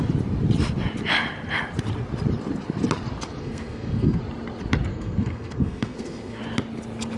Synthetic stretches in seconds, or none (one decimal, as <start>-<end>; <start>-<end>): 3.4-4.2; 4.9-6.4